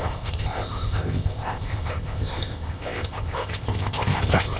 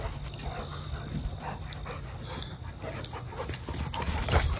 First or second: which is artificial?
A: first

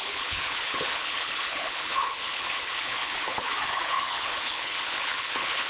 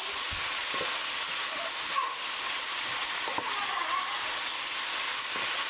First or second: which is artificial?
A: first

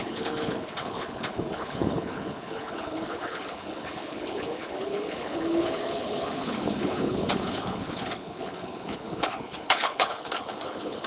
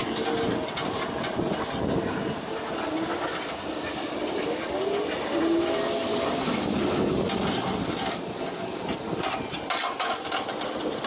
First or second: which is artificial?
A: first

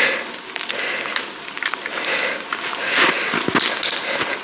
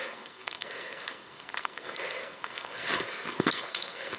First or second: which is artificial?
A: second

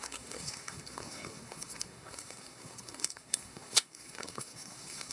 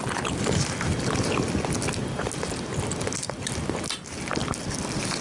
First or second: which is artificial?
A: first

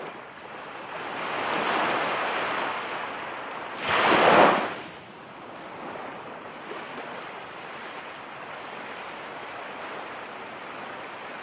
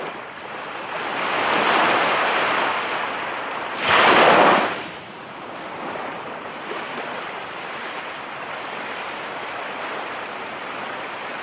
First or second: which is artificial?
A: second